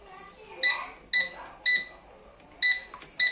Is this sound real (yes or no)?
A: yes